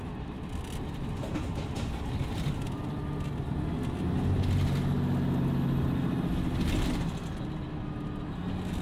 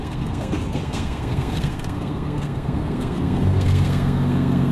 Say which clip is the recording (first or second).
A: first